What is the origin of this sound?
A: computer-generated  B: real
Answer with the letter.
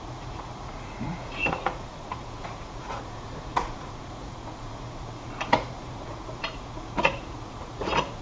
A